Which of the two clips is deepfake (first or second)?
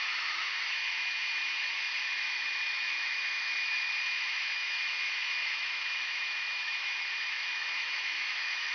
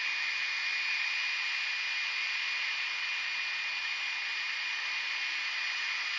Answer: first